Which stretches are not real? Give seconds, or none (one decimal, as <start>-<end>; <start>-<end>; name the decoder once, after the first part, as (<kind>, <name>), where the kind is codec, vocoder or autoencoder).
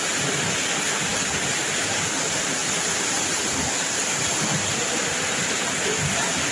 none